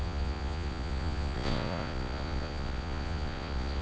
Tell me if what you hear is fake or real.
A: fake